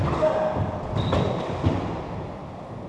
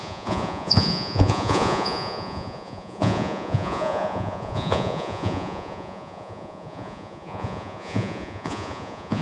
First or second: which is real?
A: first